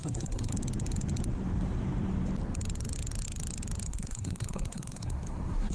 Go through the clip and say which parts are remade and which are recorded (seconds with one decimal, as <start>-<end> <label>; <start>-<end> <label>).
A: 0.0-0.5 remade; 0.5-3.9 recorded; 3.9-5.7 remade